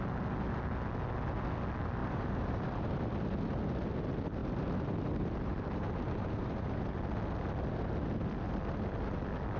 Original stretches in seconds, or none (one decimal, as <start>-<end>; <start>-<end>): 0.0-2.0; 2.9-4.4; 6.8-9.6